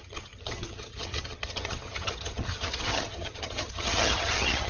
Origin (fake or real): fake